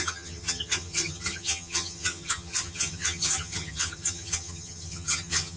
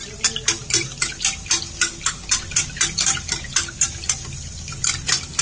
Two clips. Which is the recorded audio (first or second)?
second